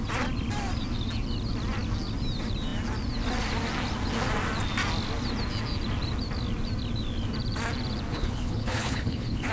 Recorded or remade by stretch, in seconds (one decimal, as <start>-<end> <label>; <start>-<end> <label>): 0.0-8.1 recorded; 8.1-9.5 remade